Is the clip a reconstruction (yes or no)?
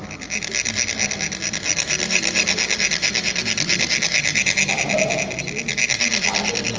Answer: no